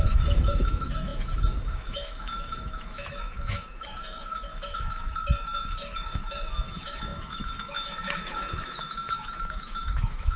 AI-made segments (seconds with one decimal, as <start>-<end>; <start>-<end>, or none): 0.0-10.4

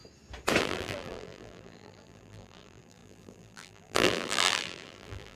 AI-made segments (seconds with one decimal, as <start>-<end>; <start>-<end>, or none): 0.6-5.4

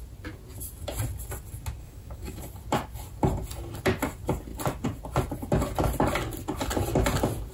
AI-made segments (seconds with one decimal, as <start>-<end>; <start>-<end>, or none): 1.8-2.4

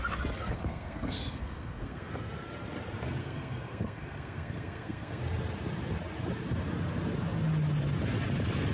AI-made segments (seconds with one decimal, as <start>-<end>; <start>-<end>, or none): 0.4-2.1; 3.2-5.2

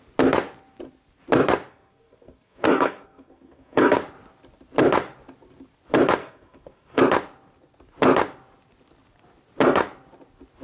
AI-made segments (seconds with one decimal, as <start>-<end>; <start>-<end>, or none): 1.7-4.0; 6.2-7.0

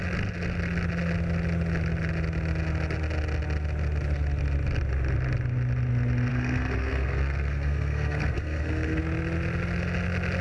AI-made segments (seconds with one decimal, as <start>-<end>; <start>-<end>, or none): 6.3-9.0